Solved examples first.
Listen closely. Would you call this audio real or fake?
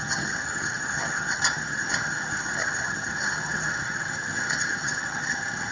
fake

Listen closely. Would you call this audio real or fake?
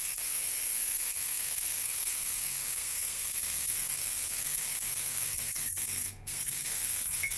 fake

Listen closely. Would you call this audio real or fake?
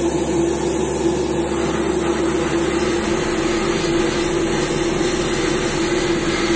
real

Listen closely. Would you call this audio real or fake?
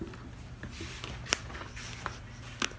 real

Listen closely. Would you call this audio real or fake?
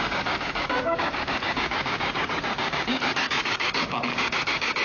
fake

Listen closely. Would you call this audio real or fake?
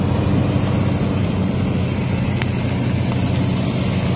real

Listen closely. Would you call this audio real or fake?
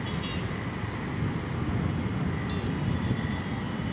real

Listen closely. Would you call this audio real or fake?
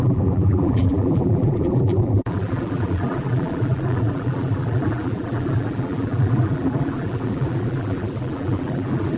fake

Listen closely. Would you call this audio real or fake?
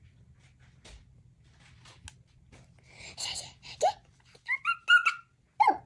real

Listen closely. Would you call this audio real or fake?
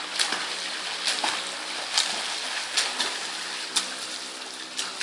real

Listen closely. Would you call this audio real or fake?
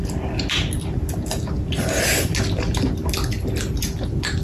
real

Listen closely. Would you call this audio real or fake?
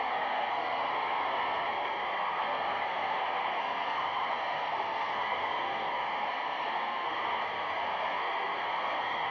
fake